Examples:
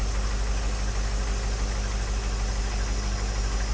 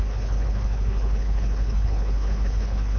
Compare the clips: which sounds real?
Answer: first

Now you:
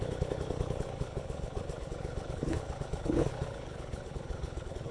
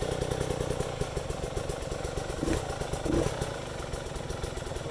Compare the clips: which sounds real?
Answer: second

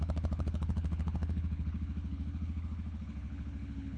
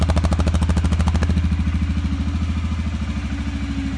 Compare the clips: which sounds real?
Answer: second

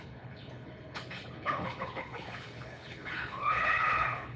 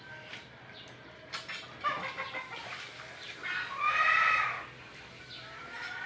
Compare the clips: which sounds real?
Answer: second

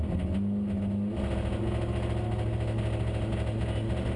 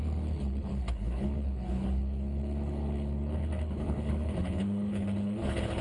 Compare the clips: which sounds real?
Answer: first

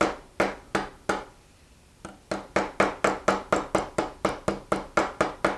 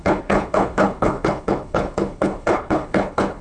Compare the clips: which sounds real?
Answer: first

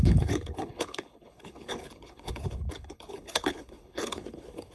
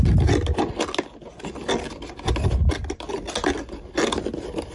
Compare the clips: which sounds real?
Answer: second